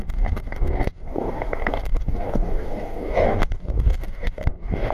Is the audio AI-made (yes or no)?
yes